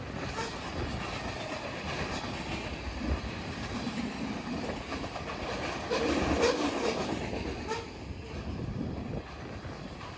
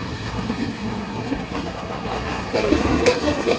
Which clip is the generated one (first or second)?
second